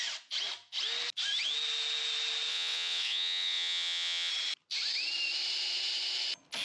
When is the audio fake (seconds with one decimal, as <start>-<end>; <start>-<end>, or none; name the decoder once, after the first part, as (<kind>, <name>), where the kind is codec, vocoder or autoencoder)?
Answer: 2.5-4.3 (vocoder, WaveNeXt)